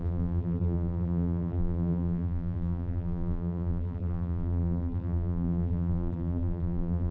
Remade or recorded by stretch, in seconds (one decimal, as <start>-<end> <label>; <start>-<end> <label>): 0.0-7.1 remade